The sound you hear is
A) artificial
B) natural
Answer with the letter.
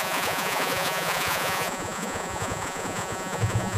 A